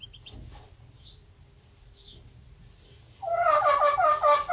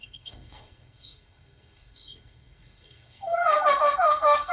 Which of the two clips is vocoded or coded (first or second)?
second